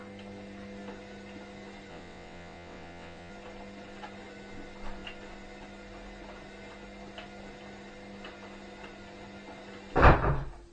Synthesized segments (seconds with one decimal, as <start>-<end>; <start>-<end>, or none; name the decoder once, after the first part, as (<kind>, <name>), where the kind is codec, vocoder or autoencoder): 1.9-3.3 (vocoder, WaveNeXt)